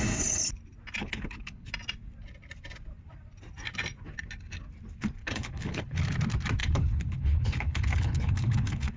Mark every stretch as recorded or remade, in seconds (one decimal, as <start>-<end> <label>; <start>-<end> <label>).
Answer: 0.0-1.0 recorded; 1.0-1.7 remade; 1.7-5.2 recorded; 5.2-6.0 remade; 6.0-6.6 recorded; 6.6-9.0 remade